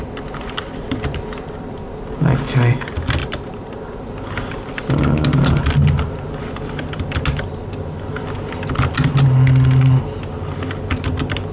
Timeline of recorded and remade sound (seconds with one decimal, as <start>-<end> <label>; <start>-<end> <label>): 0.0-3.2 recorded; 3.2-4.1 remade; 4.1-11.5 recorded

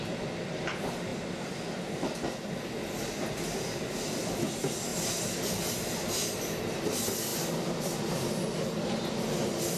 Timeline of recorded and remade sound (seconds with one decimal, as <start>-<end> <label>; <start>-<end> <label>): 0.0-1.1 recorded; 1.1-1.9 remade; 1.9-4.9 recorded; 4.9-5.7 remade; 5.7-7.3 recorded; 7.3-8.1 remade; 8.1-9.8 recorded